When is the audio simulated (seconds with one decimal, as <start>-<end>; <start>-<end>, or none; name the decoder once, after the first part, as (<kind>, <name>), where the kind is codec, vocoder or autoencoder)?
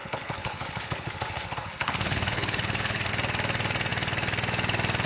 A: 0.0-3.1 (codec, HILCodec)